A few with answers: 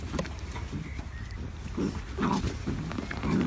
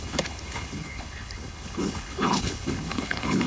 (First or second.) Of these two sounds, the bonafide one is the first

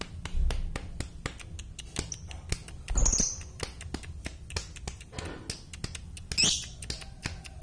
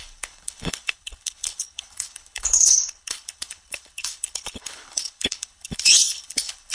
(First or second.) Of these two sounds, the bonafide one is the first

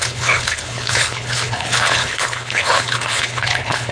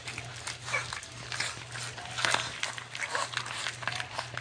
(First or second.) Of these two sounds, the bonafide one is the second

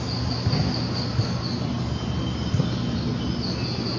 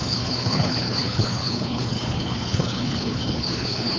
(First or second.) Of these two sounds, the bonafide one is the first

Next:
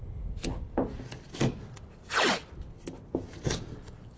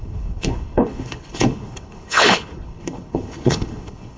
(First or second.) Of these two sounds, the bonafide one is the first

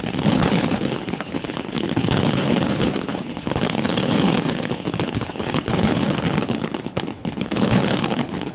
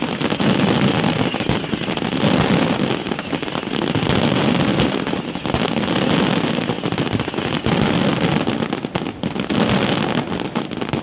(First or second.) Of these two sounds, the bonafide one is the second